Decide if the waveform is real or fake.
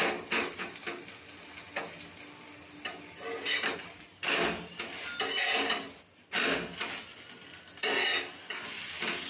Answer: real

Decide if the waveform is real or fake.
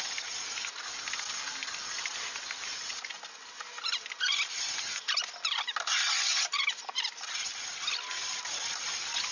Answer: real